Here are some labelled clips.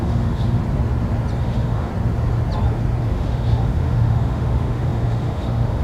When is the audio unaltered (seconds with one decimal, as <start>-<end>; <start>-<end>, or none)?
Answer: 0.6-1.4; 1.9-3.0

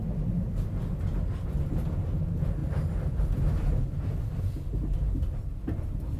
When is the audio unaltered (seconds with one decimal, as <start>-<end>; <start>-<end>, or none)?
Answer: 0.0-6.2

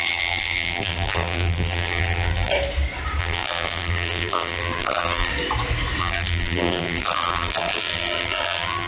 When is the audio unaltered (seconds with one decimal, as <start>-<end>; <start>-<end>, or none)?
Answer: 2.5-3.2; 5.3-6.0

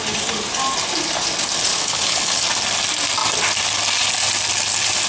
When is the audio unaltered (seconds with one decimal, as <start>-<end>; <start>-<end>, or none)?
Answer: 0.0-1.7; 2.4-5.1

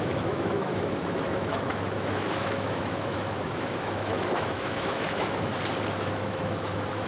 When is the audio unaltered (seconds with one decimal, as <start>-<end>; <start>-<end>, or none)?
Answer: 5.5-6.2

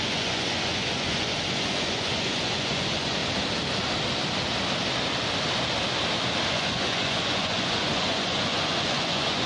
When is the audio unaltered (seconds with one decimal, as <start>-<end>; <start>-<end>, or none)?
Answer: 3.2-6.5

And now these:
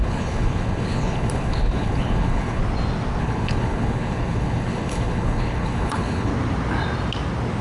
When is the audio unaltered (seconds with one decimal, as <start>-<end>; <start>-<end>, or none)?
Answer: 2.6-3.2; 6.3-7.6